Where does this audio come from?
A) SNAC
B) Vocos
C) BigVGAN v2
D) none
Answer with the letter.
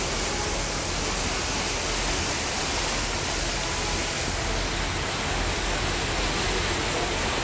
D